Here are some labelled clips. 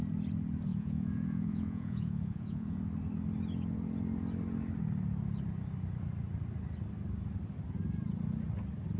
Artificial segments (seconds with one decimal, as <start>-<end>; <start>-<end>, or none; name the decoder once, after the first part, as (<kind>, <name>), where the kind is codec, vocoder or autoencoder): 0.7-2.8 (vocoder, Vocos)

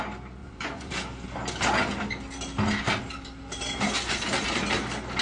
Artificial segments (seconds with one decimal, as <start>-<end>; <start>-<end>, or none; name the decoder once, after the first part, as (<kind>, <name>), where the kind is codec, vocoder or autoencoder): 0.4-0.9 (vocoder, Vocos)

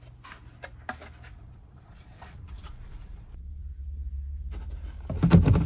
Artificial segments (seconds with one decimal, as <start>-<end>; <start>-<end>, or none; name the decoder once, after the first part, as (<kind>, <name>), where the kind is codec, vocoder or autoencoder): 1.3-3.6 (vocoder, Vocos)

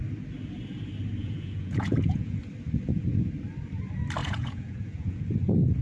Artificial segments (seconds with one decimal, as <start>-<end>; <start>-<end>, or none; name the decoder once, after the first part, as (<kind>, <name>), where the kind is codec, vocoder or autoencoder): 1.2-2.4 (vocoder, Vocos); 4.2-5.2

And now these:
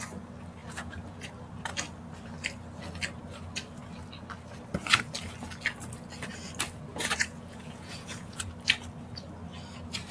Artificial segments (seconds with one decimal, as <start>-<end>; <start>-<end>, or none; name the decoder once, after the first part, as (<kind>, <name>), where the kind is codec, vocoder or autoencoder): 0.6-1.3 (vocoder, Vocos); 6.9-8.5